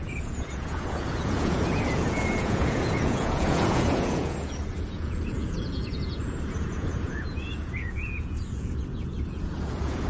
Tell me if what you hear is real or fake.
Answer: fake